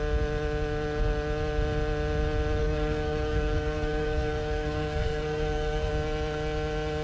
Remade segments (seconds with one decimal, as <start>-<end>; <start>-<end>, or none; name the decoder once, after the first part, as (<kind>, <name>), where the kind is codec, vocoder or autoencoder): 2.6-5.9 (codec, SNAC)